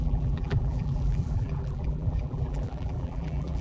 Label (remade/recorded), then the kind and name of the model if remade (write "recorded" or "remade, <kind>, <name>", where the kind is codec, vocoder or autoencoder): remade, vocoder, BigVGAN v2